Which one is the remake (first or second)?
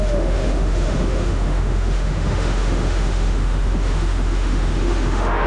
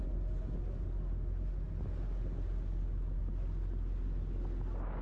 first